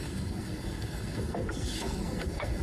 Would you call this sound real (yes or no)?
no